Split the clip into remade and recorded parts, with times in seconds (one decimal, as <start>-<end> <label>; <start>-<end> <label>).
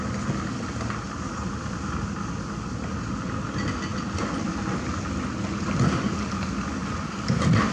0.0-7.7 recorded